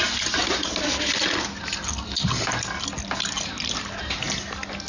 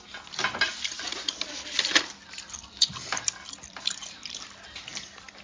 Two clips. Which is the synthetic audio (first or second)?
second